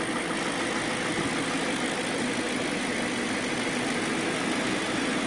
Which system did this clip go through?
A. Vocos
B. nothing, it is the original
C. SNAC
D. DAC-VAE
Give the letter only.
B